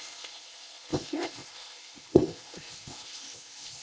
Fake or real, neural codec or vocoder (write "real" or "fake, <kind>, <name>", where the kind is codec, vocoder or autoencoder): fake, codec, ZipCodec